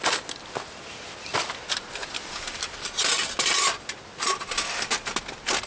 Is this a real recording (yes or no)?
yes